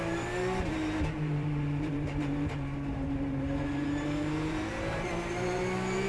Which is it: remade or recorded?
remade